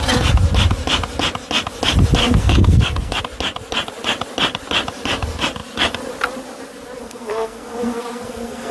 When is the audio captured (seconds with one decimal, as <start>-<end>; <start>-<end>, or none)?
0.0-2.2; 3.2-7.0